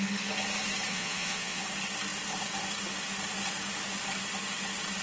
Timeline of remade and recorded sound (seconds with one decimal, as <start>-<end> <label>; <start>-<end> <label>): 0.0-0.9 recorded; 0.9-1.6 remade; 1.6-5.0 recorded